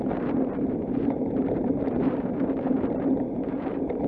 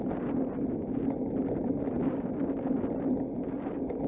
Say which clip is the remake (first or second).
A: first